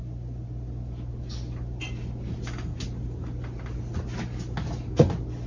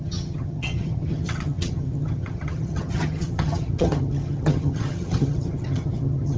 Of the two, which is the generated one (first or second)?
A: second